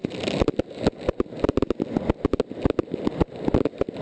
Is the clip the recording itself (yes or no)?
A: yes